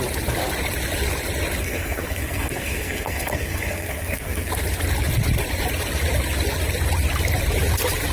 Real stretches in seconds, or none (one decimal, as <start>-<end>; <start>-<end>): 0.0-1.6; 4.5-8.1